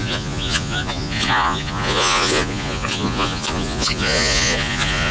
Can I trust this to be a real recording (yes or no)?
no